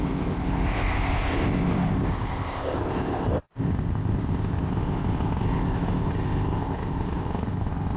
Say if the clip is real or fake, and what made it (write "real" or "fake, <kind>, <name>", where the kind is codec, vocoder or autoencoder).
fake, codec, ZipCodec